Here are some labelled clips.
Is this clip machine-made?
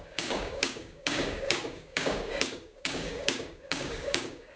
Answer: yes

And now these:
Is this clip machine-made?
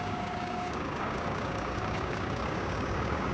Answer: yes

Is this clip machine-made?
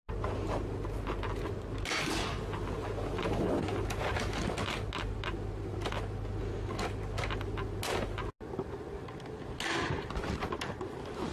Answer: no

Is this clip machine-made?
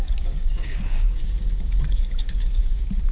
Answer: yes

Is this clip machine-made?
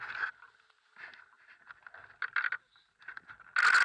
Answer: no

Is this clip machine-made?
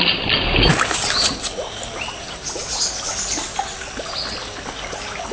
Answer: no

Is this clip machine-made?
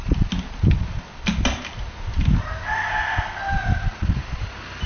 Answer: no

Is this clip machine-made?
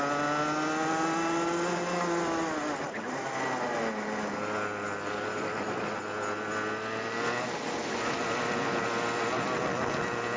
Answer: no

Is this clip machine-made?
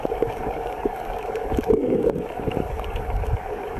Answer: yes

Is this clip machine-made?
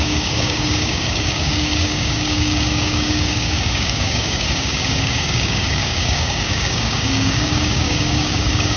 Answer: yes